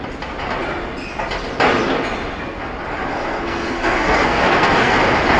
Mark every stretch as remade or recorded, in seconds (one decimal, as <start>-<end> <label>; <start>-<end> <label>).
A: 0.0-3.1 recorded; 3.1-5.0 remade; 5.0-5.4 recorded